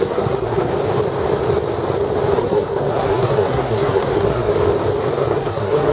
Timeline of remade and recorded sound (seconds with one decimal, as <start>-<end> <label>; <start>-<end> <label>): 0.0-0.7 remade; 0.7-2.4 recorded; 2.4-4.5 remade; 4.5-5.1 recorded; 5.1-5.9 remade